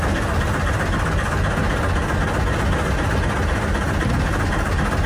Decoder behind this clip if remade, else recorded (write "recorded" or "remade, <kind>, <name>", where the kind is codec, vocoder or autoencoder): recorded